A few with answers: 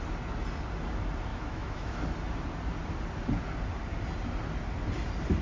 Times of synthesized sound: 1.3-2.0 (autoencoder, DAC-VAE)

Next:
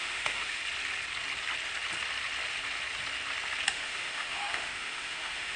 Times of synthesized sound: 0.0-0.6 (autoencoder, DAC-VAE); 3.7-5.6

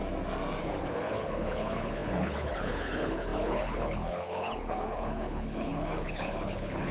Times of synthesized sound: 0.6-6.9 (codec, HILCodec)